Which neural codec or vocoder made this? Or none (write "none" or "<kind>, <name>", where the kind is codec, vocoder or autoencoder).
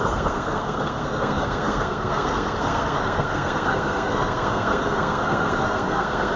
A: codec, SNAC